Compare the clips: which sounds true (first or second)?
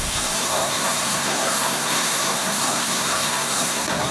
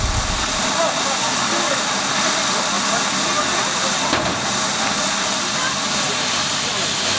second